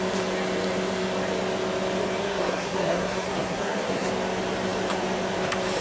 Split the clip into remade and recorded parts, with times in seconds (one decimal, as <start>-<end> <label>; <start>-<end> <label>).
0.0-2.2 recorded; 2.2-4.1 remade; 4.1-5.8 recorded